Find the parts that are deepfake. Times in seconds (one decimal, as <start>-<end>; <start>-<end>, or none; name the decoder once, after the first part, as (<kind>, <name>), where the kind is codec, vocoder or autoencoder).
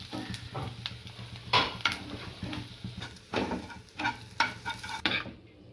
1.4-4.0 (vocoder, BigVGAN v2)